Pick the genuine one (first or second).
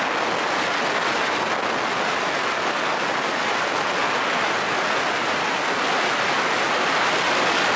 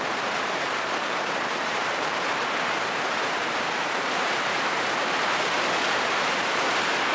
first